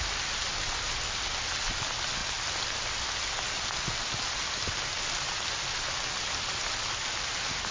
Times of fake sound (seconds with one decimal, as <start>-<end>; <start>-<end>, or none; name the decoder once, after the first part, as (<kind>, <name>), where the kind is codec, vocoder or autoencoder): none